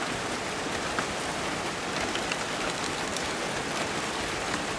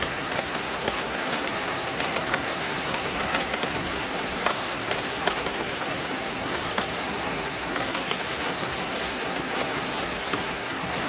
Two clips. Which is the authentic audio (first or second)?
first